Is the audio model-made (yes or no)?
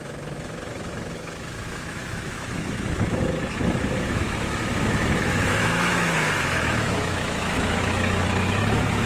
yes